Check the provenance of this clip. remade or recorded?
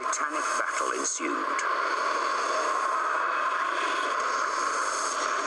recorded